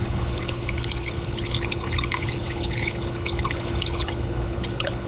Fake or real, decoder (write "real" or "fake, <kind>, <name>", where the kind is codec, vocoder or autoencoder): fake, codec, HILCodec